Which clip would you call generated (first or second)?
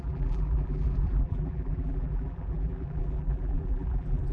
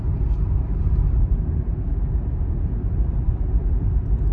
first